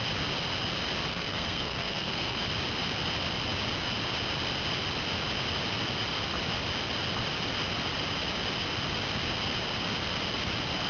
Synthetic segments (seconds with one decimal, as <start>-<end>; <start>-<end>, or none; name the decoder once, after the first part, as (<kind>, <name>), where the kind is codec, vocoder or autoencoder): 1.1-2.4 (codec, SNAC)